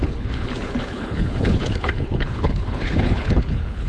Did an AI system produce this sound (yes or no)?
yes